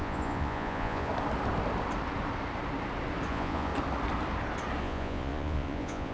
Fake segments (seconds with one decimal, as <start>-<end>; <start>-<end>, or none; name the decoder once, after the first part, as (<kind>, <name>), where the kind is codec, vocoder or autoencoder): 0.0-1.1 (vocoder, Vocos); 3.3-3.7; 4.8-6.1